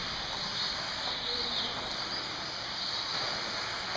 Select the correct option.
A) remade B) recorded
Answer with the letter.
B